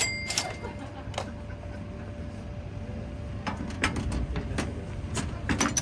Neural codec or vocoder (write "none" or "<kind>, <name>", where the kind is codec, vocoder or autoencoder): none